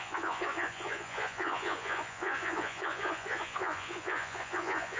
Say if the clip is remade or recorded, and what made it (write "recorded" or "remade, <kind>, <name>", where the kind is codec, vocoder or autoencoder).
remade, vocoder, Vocos